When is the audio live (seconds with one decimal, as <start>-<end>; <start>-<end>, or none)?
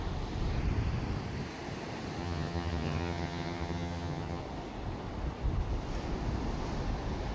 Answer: 0.0-2.2; 4.4-7.3